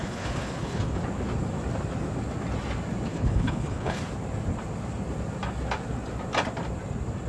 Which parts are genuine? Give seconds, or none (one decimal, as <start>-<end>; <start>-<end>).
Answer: 1.0-3.1; 4.0-7.3